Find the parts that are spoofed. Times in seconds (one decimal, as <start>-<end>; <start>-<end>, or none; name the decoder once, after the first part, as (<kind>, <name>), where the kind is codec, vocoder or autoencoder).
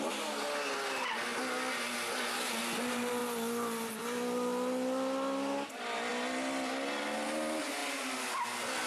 none